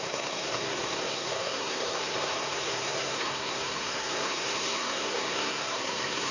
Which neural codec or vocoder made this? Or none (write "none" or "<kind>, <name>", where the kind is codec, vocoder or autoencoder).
codec, SNAC